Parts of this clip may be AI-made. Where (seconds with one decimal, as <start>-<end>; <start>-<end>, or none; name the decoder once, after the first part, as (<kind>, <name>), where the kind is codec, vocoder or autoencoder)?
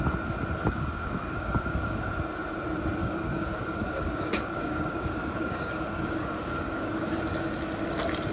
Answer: 0.6-2.0 (codec, DAC); 3.0-7.2